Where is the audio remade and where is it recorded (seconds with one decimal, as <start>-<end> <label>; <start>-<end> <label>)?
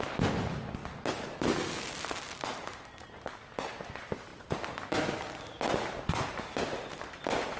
0.0-4.3 recorded; 4.3-5.4 remade; 5.4-7.6 recorded